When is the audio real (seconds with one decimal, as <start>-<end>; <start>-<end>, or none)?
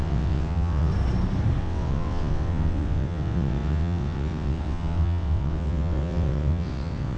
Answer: 0.9-1.6